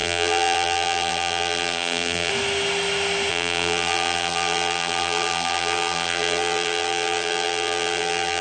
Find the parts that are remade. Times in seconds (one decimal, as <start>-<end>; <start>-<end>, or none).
0.0-2.3; 3.3-8.4